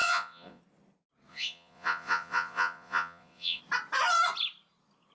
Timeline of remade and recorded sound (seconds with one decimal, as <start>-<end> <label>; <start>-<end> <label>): 0.0-0.6 remade; 0.6-1.3 recorded; 1.3-3.6 remade; 3.6-5.1 recorded